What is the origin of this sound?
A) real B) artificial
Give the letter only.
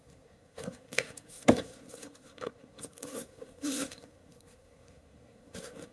B